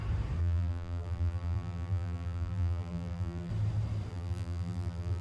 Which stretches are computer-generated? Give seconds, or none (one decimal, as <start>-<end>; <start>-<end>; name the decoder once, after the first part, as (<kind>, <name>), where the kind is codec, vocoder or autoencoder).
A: 0.4-3.5 (vocoder, BigVGAN v2); 4.1-5.2